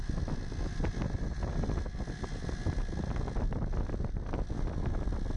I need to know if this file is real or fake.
real